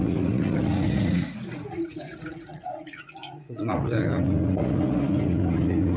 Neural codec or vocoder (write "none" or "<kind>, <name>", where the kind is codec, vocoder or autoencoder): vocoder, Vocos